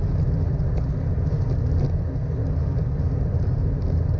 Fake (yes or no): no